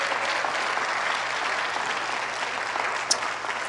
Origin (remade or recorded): recorded